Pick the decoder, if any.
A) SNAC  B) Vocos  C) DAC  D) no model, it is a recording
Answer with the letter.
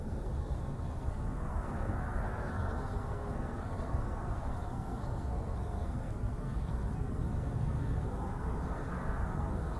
A